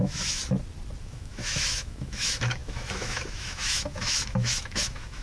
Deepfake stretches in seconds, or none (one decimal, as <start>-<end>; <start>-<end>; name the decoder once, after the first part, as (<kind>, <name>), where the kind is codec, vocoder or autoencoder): 0.0-0.4 (autoencoder, DAC-VAE); 1.0-5.2